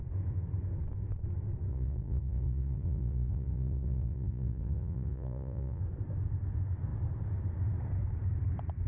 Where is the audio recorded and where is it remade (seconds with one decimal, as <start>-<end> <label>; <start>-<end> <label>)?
0.0-1.7 recorded; 1.7-5.8 remade; 5.8-8.9 recorded